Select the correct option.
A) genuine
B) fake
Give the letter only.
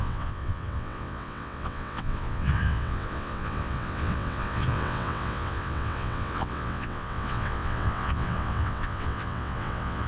B